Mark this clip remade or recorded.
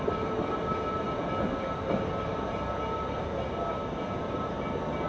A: recorded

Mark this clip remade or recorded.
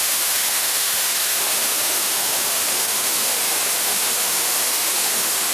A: remade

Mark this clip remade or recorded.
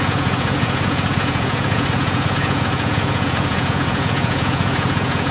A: remade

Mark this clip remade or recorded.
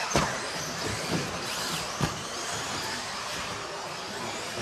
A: remade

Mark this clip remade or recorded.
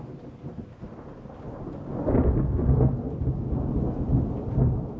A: recorded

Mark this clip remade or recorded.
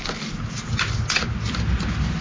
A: recorded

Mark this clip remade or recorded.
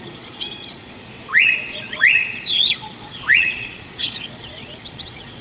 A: remade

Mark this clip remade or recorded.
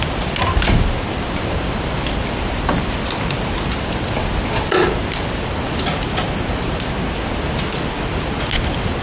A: recorded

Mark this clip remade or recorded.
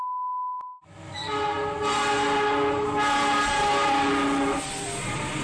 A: recorded